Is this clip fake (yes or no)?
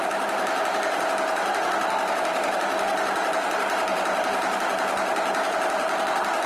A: no